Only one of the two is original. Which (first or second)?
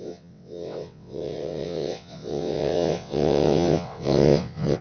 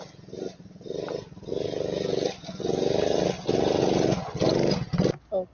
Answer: second